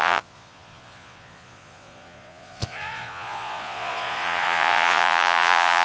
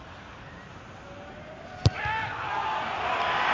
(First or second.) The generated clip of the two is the first